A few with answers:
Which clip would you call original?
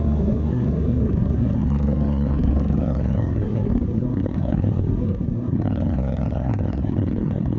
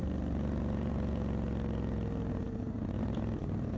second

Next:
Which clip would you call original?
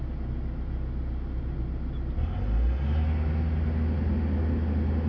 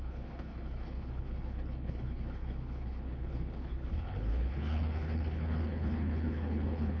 first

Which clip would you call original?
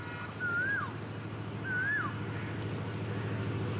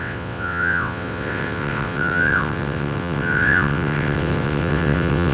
first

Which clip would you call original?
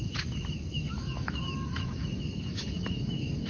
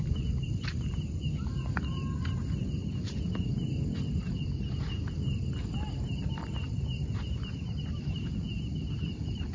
second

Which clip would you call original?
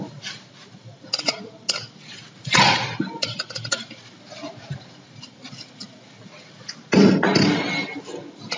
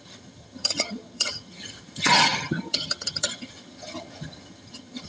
first